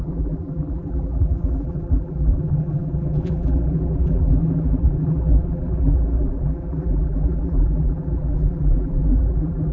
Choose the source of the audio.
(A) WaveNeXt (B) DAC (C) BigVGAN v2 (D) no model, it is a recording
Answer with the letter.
C